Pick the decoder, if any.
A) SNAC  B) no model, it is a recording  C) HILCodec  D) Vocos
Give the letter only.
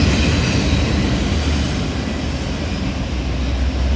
B